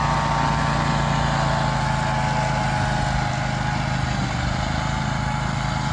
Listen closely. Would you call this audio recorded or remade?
recorded